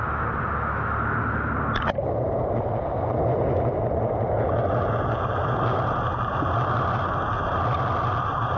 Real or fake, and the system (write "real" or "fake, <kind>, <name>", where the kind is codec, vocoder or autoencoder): real